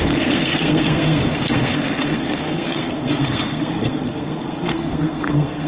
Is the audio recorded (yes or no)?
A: no